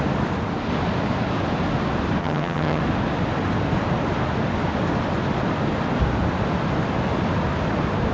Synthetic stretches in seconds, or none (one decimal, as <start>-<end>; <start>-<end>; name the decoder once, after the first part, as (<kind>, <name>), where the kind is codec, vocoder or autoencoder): 2.2-2.8 (vocoder, HiFi-GAN)